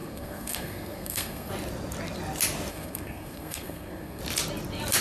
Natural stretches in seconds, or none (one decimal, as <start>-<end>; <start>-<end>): 1.5-2.7; 4.2-5.0